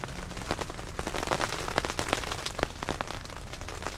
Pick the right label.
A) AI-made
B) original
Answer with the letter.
B